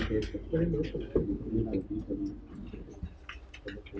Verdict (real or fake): real